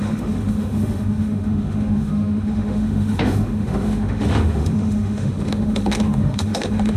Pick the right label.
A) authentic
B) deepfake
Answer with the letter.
B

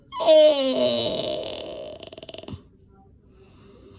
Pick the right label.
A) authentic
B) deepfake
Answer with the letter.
A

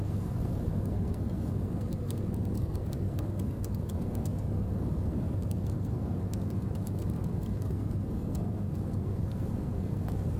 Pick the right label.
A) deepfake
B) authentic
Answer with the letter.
A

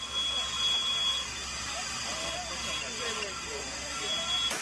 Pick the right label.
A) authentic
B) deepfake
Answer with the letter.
A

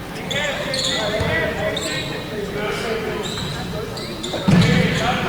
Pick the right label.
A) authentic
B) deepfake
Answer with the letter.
A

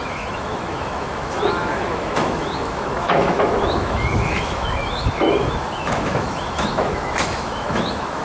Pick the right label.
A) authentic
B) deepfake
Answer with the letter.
B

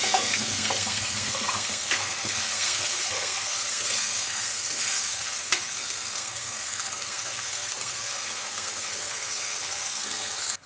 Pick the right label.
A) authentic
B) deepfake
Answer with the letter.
B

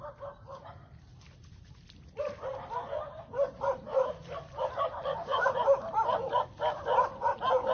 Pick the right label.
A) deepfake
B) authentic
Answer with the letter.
B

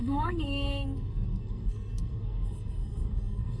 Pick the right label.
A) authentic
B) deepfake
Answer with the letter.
B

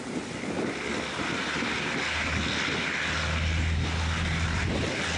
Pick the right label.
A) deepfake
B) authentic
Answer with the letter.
B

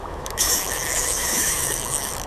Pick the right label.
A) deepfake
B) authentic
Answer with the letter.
A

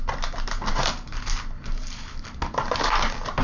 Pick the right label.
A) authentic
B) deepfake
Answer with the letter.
A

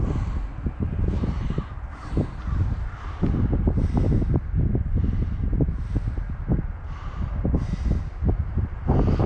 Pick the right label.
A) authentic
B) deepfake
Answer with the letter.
A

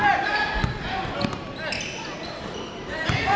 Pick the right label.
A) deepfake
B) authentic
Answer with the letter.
B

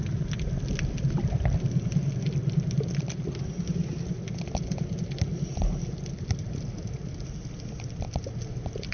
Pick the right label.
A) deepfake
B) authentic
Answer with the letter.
B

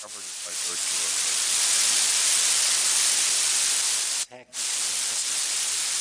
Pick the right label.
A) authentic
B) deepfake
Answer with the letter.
A